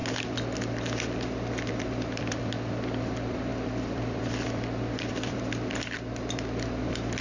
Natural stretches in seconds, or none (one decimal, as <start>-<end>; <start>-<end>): 0.0-1.7